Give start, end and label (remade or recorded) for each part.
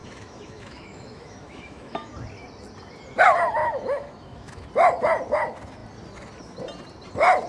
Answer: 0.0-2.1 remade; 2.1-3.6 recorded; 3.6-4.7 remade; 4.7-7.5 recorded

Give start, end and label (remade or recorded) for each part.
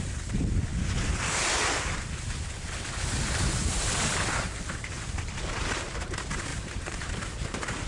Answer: 0.0-6.5 recorded; 6.5-7.1 remade; 7.1-7.9 recorded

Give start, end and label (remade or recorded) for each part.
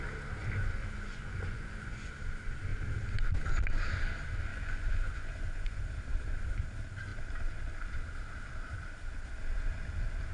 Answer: 0.0-0.4 recorded; 0.4-2.1 remade; 2.1-4.5 recorded; 4.5-5.8 remade; 5.8-10.3 recorded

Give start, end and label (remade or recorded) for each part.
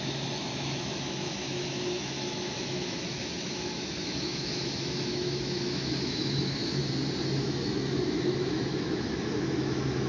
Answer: 0.0-6.8 remade; 6.8-7.4 recorded; 7.4-10.1 remade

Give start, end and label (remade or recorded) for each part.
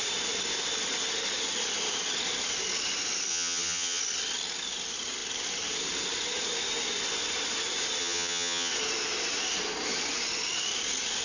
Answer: 0.0-3.3 recorded; 3.3-4.0 remade; 4.0-8.0 recorded; 8.0-8.7 remade; 8.7-11.2 recorded